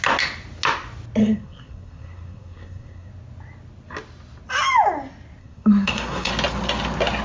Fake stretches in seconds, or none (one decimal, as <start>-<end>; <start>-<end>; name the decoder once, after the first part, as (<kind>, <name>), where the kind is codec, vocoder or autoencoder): 1.2-3.1 (codec, SNAC); 5.4-6.3